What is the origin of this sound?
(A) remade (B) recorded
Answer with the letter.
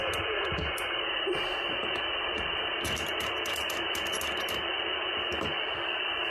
B